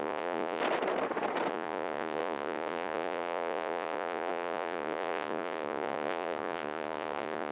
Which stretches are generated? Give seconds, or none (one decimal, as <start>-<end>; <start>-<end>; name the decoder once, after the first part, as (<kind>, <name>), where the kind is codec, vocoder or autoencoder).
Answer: 0.0-0.6 (vocoder, Vocos); 1.5-7.5